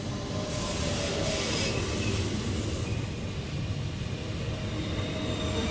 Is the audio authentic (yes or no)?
yes